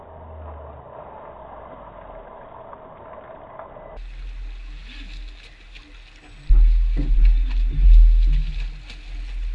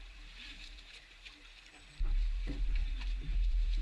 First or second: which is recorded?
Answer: first